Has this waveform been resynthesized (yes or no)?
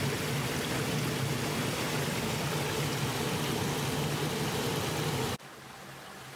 no